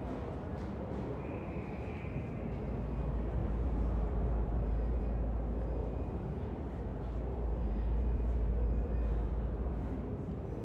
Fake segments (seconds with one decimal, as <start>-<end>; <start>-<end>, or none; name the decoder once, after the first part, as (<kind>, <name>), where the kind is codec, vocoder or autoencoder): 3.4-5.0 (vocoder, BigVGAN v2); 5.8-6.5; 6.9-9.7